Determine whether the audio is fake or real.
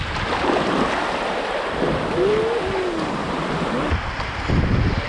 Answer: real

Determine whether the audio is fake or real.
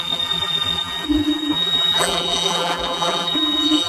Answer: fake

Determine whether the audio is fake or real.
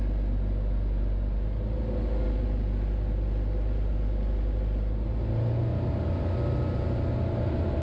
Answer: real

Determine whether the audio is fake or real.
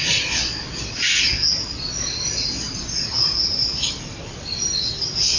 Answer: fake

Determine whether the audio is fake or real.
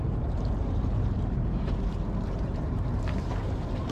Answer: fake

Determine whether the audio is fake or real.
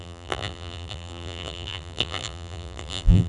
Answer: fake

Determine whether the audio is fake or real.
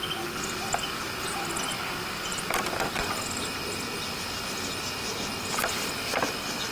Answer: real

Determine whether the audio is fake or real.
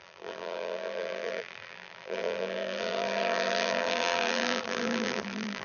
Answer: fake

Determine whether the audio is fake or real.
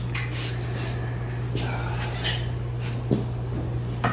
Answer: real